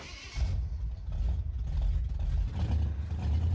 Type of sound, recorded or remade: recorded